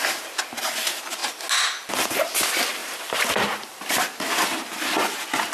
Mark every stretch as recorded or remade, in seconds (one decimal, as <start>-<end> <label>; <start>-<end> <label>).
0.0-2.8 recorded; 2.8-4.0 remade; 4.0-5.5 recorded